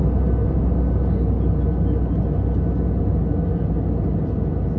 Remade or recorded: recorded